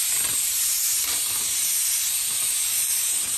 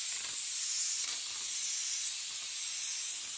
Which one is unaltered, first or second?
second